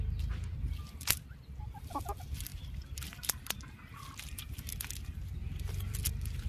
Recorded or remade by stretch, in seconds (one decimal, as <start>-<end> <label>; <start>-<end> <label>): 0.0-6.5 recorded